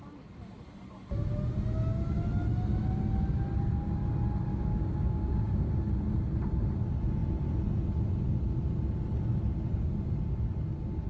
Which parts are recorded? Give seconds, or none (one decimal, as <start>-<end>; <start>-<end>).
0.0-4.5; 5.7-11.1